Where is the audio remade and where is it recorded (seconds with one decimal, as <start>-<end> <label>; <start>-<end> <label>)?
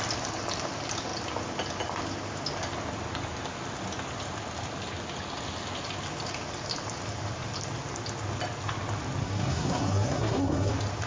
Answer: 0.0-9.2 recorded; 9.2-10.7 remade; 10.7-11.1 recorded